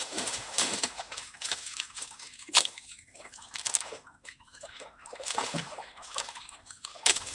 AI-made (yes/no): yes